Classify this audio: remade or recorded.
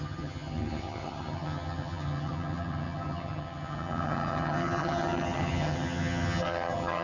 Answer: remade